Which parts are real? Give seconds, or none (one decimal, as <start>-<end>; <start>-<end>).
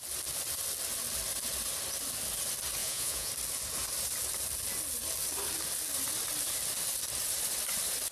0.0-2.8; 3.3-8.1